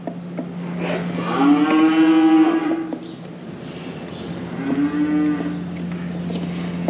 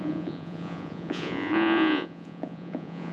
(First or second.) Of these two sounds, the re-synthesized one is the second